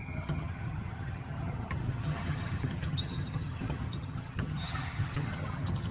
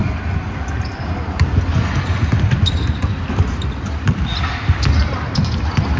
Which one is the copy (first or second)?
first